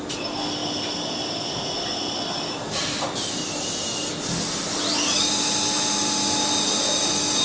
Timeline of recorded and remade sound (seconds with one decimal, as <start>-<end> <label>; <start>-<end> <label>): 0.0-7.4 recorded